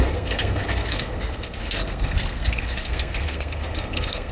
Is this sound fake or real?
fake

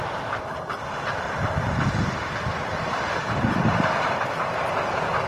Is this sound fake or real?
real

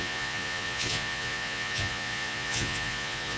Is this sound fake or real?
fake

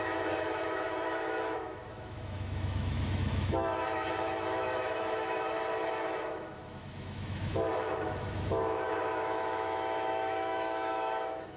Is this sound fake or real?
fake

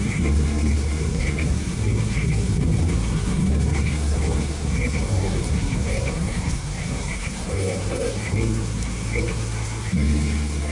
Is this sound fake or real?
fake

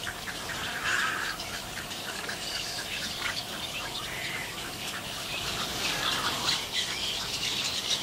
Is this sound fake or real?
fake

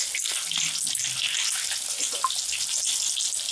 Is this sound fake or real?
real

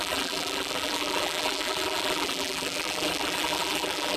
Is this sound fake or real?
fake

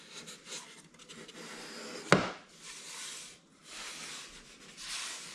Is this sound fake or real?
real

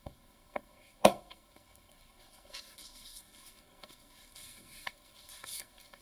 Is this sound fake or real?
fake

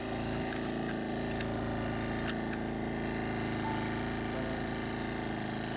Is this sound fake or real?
real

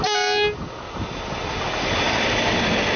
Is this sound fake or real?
real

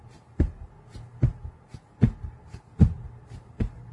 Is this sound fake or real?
real